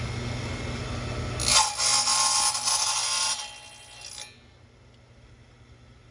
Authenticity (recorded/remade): recorded